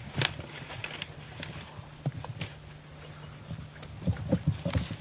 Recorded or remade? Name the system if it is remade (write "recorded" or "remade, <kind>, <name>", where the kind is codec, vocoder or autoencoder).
recorded